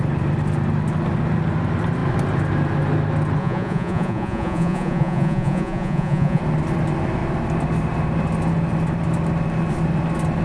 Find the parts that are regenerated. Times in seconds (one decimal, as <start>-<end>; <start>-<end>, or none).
3.4-6.4

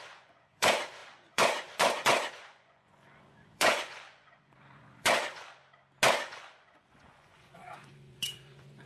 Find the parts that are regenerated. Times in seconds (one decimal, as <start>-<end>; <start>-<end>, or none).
0.0-5.6; 6.2-8.9

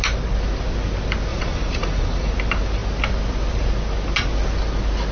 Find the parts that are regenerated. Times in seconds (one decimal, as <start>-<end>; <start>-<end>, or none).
1.3-2.3